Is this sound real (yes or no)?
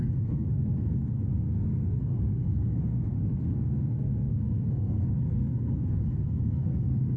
no